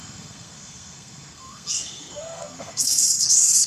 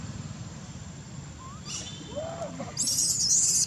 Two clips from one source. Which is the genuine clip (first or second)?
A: second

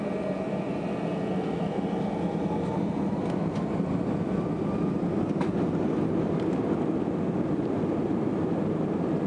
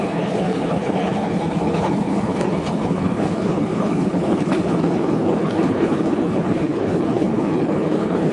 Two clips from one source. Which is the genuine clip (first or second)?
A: first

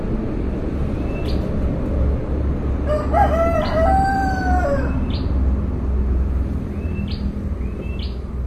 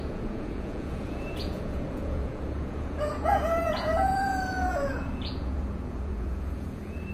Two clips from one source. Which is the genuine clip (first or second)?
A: first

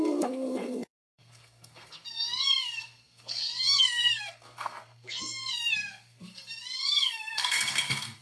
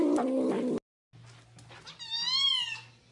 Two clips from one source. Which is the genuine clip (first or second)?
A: second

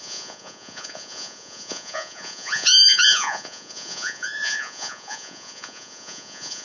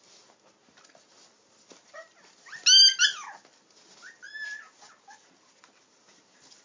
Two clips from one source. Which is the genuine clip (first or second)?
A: second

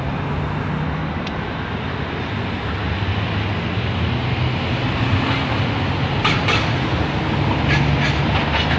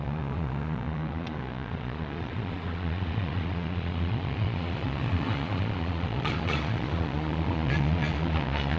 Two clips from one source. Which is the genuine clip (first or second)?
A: first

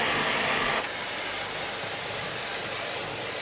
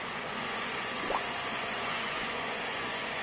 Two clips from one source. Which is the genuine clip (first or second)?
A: first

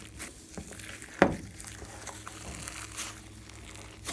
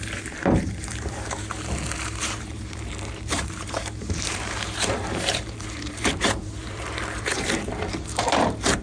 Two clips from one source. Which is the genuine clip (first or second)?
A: first